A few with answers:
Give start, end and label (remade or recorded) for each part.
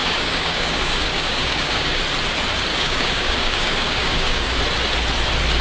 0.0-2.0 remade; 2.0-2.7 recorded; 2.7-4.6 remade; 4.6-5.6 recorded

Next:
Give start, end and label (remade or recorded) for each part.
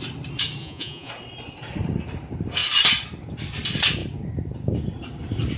0.0-0.6 recorded; 0.6-1.1 remade; 1.1-5.6 recorded